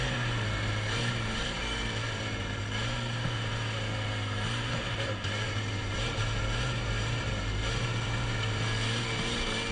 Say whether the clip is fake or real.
fake